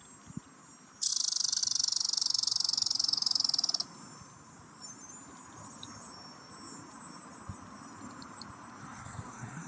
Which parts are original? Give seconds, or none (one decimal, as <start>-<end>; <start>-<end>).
0.0-8.8